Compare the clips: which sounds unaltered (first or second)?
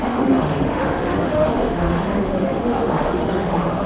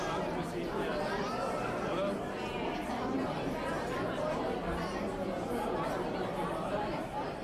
second